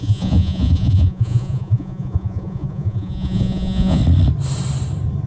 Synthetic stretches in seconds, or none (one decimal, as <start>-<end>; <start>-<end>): 0.0-4.0